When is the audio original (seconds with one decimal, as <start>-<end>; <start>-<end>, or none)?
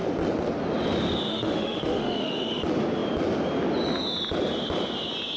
0.0-1.3; 2.6-5.4